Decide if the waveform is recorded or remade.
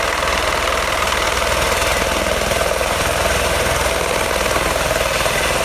recorded